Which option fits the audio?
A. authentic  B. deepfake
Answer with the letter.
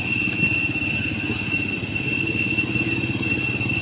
A